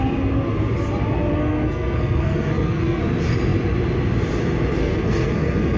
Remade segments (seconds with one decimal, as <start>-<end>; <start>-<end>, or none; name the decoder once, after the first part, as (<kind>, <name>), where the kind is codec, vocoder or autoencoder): 1.3-3.0 (codec, SNAC); 4.8-5.8